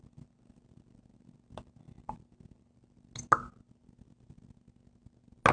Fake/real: real